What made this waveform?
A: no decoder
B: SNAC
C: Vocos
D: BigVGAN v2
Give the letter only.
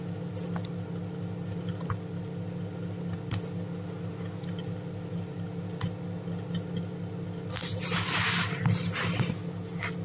A